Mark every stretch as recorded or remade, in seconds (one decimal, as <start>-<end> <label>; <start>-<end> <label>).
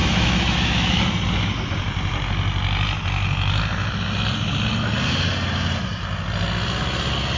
0.0-1.0 remade; 1.0-7.4 recorded